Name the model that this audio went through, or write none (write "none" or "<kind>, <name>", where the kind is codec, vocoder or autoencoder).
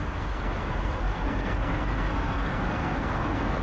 codec, SNAC